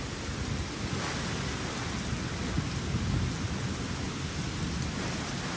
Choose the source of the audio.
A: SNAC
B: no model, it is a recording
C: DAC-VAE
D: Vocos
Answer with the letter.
B